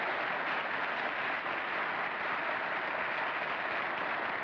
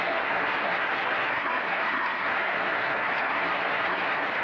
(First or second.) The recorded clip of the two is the first